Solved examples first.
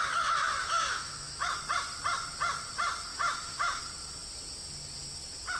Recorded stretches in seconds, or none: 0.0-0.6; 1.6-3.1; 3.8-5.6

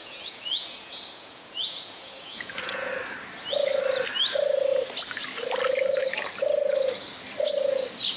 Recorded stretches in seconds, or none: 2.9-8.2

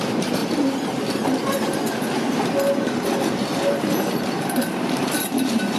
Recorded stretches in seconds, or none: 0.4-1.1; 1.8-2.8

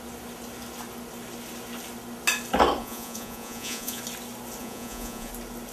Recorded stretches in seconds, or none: 0.0-2.8; 4.0-4.6; 5.3-5.7

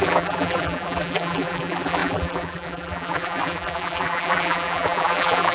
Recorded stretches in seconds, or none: none

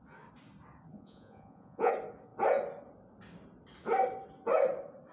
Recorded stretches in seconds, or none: 0.0-0.9; 1.9-5.1